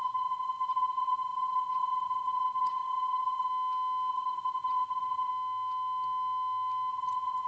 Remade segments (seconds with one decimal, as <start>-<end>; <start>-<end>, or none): 0.0-3.5; 4.1-5.3; 6.9-7.5

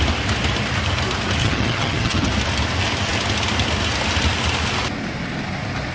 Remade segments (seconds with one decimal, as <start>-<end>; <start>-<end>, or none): 1.4-2.3

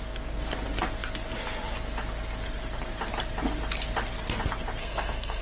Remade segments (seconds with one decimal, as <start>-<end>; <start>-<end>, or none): 4.8-5.4

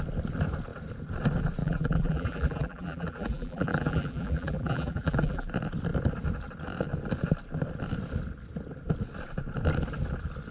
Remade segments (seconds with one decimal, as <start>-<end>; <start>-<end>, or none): 1.6-5.5

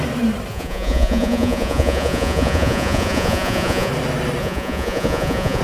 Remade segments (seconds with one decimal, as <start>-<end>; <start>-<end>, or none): 0.5-3.9; 4.4-5.6

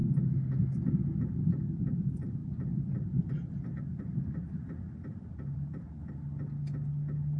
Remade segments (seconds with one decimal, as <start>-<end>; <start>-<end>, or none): 2.4-6.1

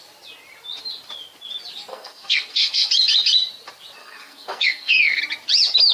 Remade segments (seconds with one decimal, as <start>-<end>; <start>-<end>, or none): 1.9-2.9; 4.0-5.2